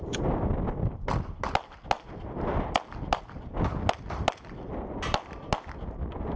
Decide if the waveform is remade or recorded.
recorded